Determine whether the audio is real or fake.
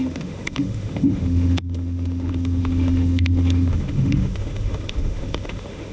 fake